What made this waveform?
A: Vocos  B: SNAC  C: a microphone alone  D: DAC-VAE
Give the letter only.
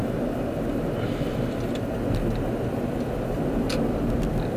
C